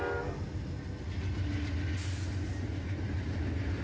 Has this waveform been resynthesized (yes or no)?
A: no